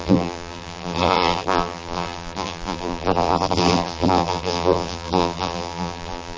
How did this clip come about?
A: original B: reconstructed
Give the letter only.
B